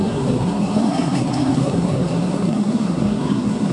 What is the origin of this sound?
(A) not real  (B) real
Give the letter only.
A